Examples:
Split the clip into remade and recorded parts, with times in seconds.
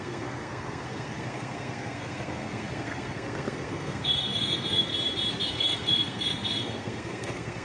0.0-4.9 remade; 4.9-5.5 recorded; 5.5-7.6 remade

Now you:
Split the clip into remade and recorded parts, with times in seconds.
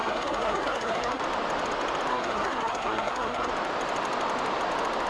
0.0-1.2 remade; 1.2-2.1 recorded; 2.1-3.5 remade; 3.5-5.1 recorded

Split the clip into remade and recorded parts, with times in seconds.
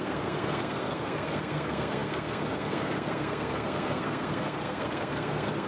0.0-5.7 remade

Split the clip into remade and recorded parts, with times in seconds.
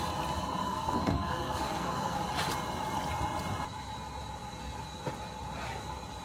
0.0-0.6 recorded; 0.6-2.2 remade; 2.2-6.2 recorded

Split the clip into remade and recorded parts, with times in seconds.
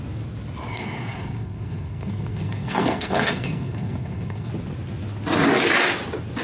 0.0-0.7 recorded; 0.7-4.5 remade; 4.5-6.4 recorded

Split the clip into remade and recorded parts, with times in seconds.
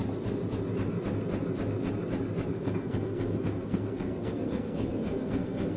0.0-2.5 recorded; 2.5-5.8 remade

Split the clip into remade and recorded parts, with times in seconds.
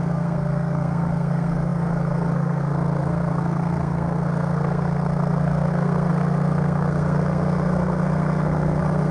0.0-9.1 remade